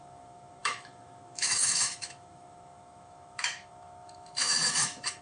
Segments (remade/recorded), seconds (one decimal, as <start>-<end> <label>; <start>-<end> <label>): 0.0-5.2 remade